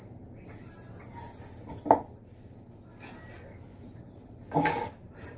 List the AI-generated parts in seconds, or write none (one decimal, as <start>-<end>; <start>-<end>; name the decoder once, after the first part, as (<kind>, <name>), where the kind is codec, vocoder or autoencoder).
3.7-5.4 (vocoder, BigVGAN v2)